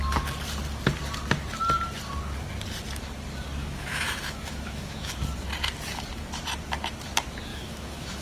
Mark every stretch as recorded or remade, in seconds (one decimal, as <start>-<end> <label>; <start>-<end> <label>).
0.0-3.6 recorded; 3.6-5.1 remade; 5.1-7.5 recorded; 7.5-8.2 remade